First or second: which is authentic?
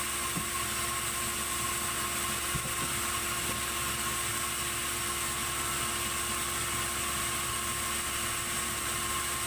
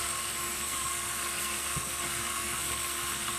first